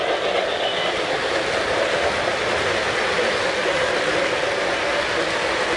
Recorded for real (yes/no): yes